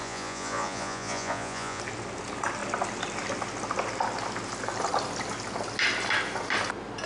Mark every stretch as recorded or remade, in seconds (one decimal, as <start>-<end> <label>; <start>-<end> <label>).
0.0-1.8 remade; 1.8-7.1 recorded